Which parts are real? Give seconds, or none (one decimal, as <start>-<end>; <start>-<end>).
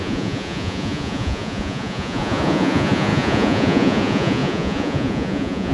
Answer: none